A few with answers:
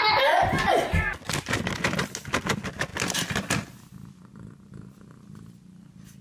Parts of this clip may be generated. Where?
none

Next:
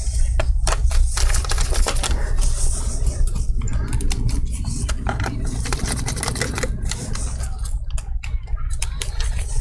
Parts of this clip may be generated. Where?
0.0-3.7 (vocoder, BigVGAN v2); 8.0-9.6